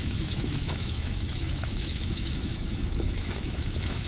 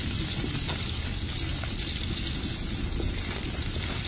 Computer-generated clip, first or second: first